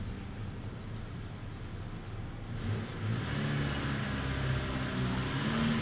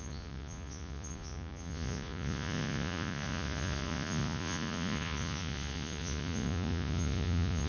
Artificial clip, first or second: second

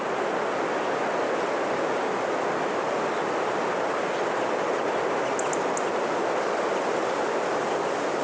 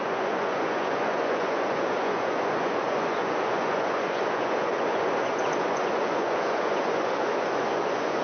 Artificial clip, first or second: second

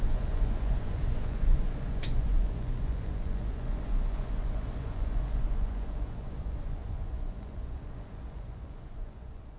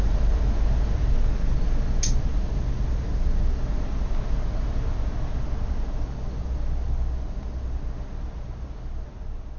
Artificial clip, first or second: first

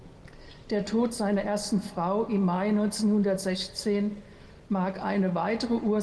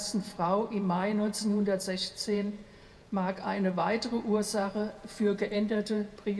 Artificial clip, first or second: second